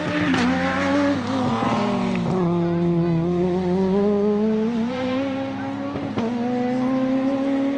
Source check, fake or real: real